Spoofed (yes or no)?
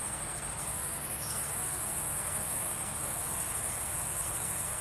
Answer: yes